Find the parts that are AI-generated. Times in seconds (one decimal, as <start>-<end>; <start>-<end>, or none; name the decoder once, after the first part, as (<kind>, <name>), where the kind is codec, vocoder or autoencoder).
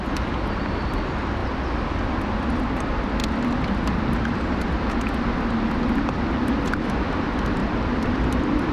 7.6-8.7 (vocoder, BigVGAN v2)